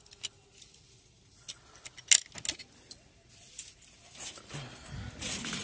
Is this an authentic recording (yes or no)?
yes